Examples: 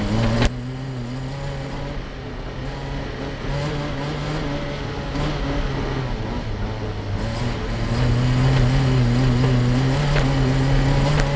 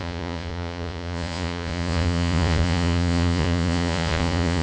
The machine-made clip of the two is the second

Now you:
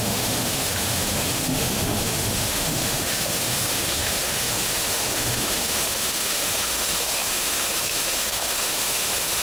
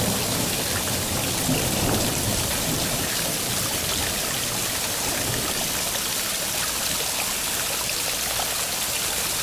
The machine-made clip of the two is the first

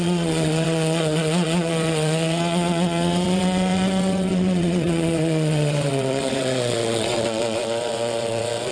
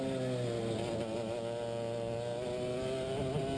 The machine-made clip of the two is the first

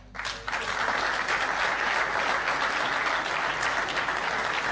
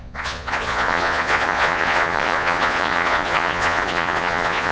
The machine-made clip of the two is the second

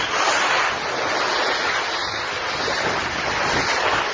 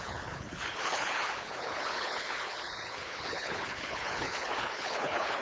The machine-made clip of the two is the second